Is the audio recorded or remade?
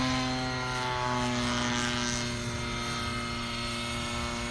recorded